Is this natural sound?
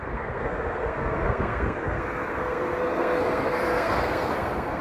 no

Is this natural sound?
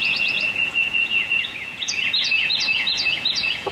no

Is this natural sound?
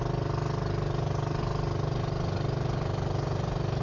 yes